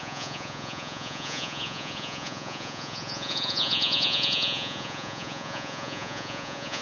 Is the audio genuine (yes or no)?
no